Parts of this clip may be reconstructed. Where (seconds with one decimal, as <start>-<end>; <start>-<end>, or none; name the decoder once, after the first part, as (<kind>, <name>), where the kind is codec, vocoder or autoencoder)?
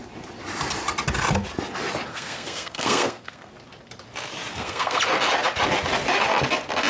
2.1-3.5 (codec, SNAC); 4.5-5.0